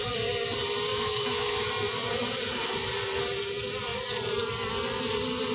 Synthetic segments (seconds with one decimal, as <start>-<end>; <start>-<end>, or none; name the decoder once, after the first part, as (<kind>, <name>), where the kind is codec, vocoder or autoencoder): 0.9-1.7 (autoencoder, DAC-VAE)